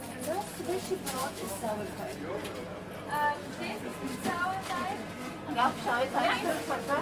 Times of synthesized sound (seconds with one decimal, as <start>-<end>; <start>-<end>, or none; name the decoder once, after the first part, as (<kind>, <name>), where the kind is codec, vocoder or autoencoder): 1.2-1.9 (autoencoder, DAC-VAE)